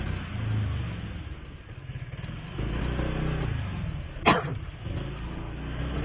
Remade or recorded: recorded